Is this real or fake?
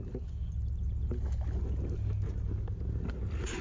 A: real